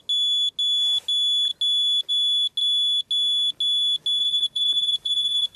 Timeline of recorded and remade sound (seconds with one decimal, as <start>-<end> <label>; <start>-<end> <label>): 0.0-4.2 recorded; 4.2-5.6 remade

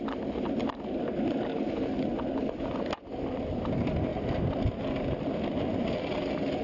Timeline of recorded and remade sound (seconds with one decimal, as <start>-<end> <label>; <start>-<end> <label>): 0.0-6.6 recorded